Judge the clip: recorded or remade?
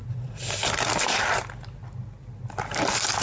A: recorded